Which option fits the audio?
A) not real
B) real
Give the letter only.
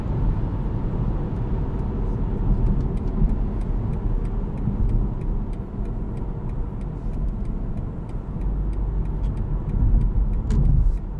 B